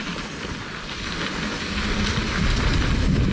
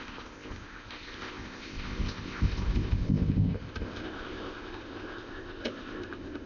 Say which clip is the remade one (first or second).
second